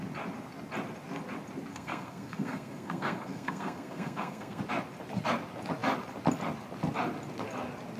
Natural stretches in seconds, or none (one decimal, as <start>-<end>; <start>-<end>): 0.0-1.7; 4.6-8.0